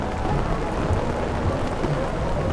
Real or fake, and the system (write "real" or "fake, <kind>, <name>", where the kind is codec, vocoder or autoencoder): real